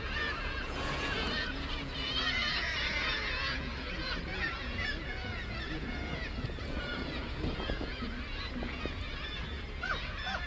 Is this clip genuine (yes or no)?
no